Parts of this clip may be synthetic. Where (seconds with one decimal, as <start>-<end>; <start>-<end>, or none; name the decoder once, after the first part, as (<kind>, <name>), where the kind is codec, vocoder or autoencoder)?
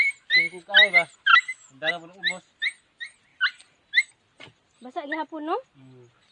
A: 1.3-1.9 (autoencoder, DAC-VAE)